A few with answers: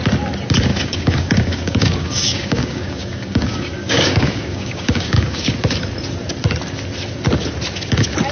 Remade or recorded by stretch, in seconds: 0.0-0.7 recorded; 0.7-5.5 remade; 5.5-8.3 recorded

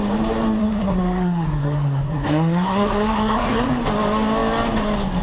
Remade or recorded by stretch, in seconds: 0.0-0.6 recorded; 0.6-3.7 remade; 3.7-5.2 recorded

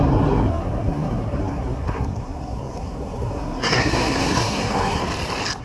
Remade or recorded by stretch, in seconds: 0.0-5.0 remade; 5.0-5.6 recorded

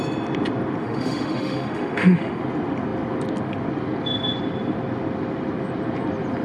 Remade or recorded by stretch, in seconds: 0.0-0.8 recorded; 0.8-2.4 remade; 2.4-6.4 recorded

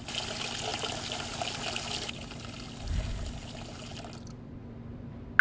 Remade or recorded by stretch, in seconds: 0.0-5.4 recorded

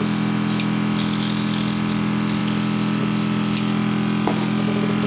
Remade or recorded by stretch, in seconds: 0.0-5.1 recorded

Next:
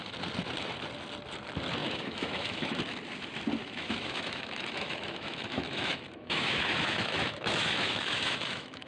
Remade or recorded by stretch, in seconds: 0.0-1.8 recorded; 1.8-2.8 remade; 2.8-3.6 recorded; 3.6-8.9 remade

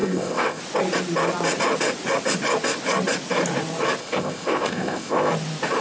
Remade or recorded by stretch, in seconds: 0.0-0.6 remade; 0.6-4.0 recorded; 4.0-5.3 remade; 5.3-5.8 recorded